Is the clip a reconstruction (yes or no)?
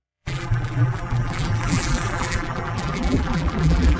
yes